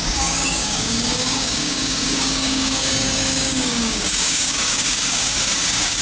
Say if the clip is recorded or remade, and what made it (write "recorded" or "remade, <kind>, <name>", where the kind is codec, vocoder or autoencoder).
remade, codec, DAC